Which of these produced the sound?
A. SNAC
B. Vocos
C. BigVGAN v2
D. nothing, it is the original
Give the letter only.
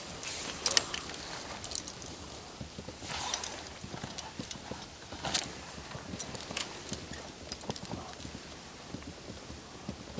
D